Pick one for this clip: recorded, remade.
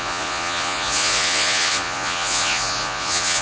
remade